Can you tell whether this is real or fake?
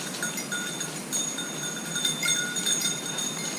real